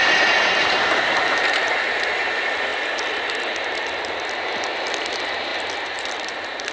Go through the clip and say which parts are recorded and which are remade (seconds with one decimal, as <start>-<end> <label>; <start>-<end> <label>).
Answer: 0.0-1.7 remade; 1.7-6.7 recorded